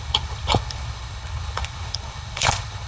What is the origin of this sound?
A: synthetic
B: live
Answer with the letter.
A